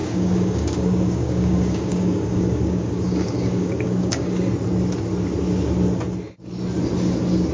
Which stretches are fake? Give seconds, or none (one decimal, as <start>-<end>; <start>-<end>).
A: 0.0-4.5